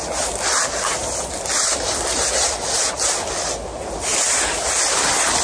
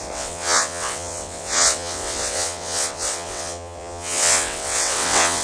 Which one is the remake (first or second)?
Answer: second